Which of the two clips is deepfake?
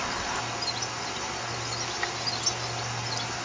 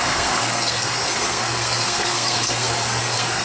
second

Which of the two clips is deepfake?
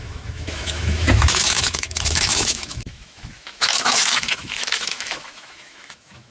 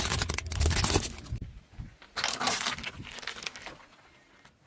first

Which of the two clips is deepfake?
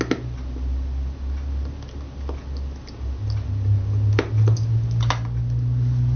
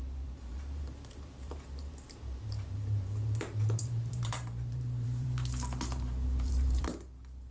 second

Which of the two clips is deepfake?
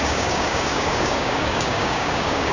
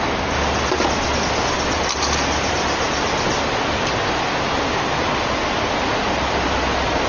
first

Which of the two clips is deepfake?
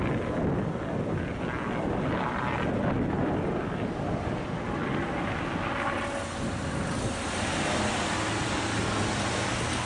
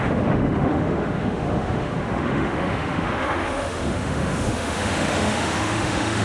second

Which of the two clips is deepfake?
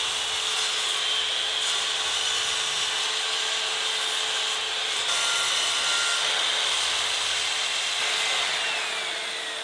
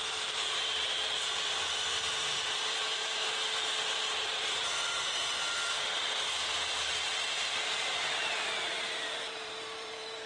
second